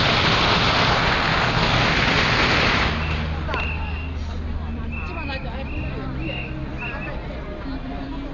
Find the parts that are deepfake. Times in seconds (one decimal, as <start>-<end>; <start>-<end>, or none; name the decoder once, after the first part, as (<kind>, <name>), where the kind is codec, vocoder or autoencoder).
none